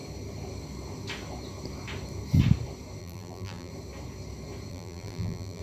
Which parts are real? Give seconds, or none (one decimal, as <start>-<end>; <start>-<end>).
0.0-3.0; 3.7-4.7